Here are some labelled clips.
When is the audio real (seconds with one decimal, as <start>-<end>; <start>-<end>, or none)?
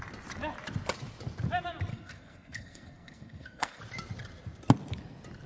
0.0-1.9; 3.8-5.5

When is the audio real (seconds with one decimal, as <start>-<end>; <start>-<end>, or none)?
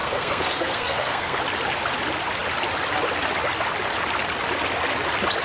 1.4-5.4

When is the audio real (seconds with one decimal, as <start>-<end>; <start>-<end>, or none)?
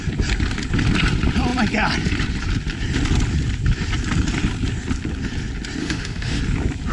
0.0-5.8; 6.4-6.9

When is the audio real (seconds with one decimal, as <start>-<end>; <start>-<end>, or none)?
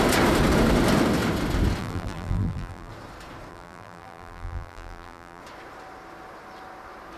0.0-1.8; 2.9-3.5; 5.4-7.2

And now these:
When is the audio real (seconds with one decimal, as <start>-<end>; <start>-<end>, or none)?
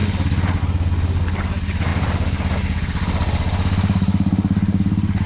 0.0-5.3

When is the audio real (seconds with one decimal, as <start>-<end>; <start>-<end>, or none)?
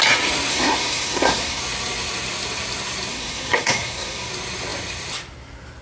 0.0-0.5; 1.6-3.1; 4.3-5.8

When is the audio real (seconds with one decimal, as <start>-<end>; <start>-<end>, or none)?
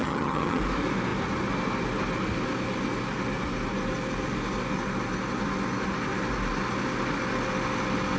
0.6-8.2